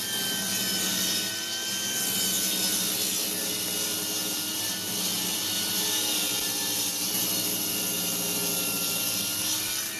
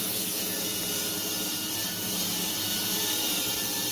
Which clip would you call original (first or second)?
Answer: first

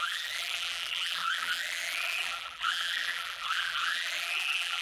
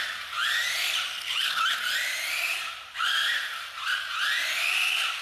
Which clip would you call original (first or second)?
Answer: second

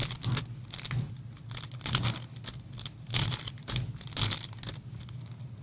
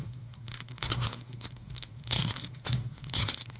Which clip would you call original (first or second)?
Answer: first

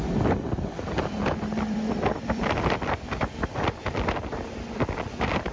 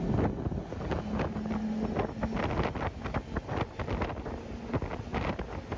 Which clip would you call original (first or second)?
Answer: second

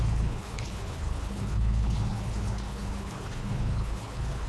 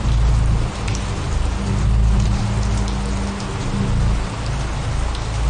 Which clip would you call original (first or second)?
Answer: second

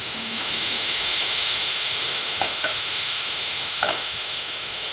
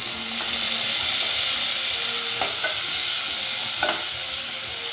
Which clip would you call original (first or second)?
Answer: second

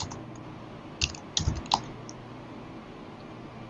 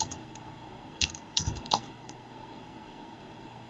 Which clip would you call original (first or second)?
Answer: first